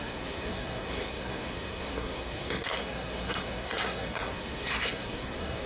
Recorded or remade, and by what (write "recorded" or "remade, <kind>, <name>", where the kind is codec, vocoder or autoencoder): remade, codec, SNAC